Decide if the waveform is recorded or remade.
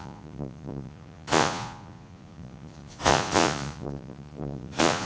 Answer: remade